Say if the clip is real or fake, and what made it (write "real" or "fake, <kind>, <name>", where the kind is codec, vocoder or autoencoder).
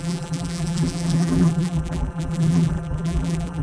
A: fake, vocoder, BigVGAN v2